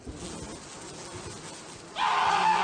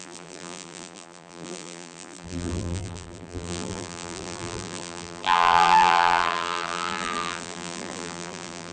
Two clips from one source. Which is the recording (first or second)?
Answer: first